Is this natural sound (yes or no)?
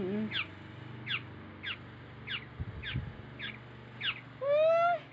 yes